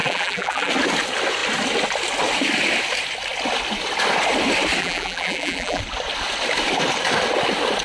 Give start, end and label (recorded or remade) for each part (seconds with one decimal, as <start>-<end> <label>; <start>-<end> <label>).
0.0-0.7 remade; 0.7-4.8 recorded; 4.8-5.8 remade; 5.8-7.8 recorded